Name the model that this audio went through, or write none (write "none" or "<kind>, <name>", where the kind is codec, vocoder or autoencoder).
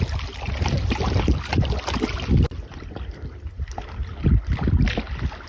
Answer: none